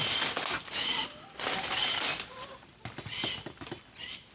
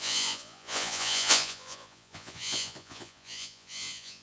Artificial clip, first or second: second